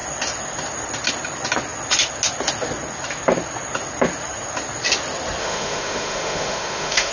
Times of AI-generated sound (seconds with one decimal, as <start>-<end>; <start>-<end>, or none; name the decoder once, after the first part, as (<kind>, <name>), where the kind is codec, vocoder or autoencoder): 5.4-7.1 (autoencoder, DAC-VAE)